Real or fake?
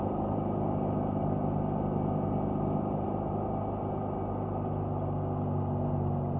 real